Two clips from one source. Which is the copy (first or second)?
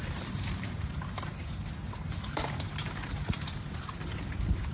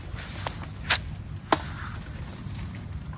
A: first